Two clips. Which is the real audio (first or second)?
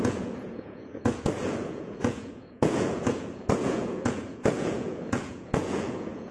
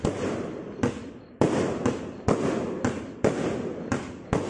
second